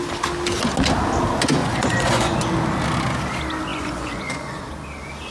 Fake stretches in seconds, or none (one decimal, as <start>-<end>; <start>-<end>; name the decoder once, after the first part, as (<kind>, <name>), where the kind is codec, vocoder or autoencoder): 1.6-2.4 (vocoder, Vocos); 3.7-4.6